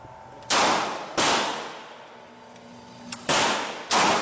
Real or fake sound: real